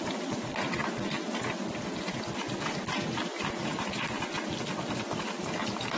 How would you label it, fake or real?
real